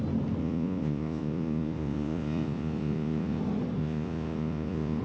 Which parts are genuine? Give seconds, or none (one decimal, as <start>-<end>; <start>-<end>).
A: 0.0-0.4; 3.4-3.8